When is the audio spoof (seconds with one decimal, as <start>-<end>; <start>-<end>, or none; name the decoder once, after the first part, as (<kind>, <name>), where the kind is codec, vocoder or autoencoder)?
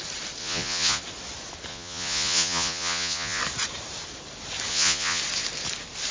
0.4-1.0 (vocoder, Vocos); 1.7-3.4; 4.7-5.2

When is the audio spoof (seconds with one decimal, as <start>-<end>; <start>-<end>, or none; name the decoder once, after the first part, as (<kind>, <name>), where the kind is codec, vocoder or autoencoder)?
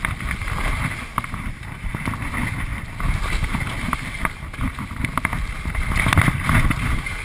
1.1-1.9 (vocoder, BigVGAN v2)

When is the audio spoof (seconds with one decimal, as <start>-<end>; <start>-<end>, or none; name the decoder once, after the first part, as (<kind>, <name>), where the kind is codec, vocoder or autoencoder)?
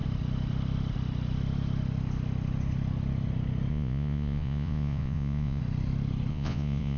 3.7-5.6 (vocoder, Vocos); 6.3-7.0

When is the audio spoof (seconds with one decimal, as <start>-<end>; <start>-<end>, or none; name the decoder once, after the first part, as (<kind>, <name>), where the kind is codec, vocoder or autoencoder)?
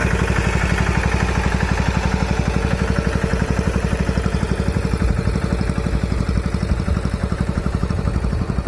3.3-4.0 (vocoder, BigVGAN v2); 7.2-7.9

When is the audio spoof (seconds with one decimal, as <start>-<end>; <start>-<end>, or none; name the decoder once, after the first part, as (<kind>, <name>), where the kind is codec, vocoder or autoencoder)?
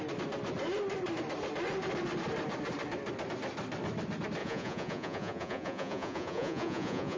4.4-7.2 (vocoder, Vocos)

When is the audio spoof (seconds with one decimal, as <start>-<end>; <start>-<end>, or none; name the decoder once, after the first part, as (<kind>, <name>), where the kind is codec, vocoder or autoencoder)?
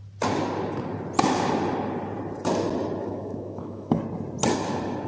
3.0-4.0 (autoencoder, DAC-VAE)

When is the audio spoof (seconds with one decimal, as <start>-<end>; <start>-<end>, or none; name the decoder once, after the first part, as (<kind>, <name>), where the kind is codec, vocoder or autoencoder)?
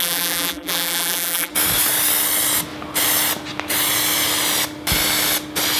0.0-1.5 (vocoder, BigVGAN v2)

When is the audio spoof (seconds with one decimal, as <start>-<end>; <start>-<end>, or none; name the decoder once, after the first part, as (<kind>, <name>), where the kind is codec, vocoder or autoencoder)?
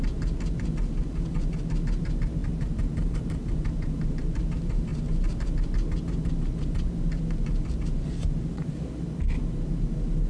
none